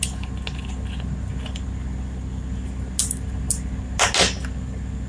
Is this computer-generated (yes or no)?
no